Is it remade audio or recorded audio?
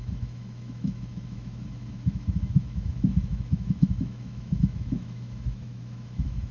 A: remade